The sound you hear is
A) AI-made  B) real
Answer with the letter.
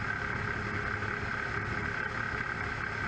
B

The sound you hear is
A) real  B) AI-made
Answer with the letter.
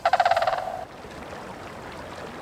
A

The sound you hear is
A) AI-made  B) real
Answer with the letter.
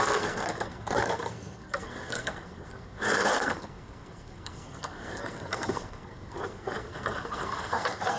A